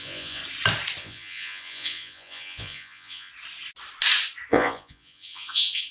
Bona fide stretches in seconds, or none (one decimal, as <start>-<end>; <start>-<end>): 0.4-1.0; 3.3-4.5